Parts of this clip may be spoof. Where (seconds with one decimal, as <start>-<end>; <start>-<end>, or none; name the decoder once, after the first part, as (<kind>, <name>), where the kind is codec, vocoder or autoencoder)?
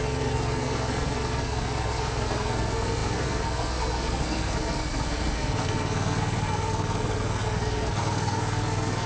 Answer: 0.0-9.1 (codec, SNAC)